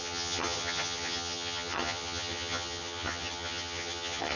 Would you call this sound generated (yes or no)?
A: yes